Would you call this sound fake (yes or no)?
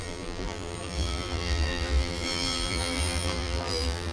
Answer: yes